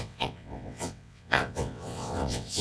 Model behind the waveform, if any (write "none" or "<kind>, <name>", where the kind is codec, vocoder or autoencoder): vocoder, WaveNeXt